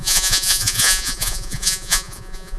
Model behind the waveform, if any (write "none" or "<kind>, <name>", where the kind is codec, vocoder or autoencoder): vocoder, Vocos